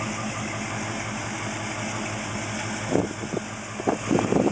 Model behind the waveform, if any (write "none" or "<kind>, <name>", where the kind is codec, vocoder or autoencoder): none